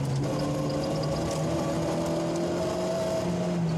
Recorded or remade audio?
recorded